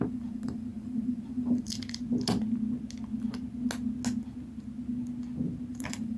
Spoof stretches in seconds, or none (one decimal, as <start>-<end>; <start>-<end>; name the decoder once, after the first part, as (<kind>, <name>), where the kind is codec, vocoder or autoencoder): 0.0-2.0 (vocoder, BigVGAN v2); 5.7-6.2